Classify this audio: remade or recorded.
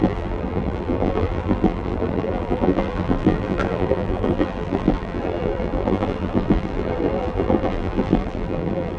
remade